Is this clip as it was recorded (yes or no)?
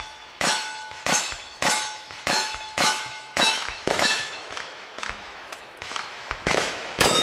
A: no